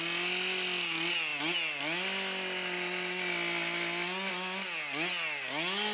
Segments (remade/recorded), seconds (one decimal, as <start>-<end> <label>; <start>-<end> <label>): 0.0-5.9 recorded